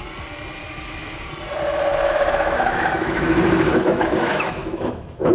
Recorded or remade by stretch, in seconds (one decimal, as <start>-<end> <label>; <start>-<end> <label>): 0.0-0.6 recorded; 0.6-1.3 remade; 1.3-1.9 recorded; 1.9-5.3 remade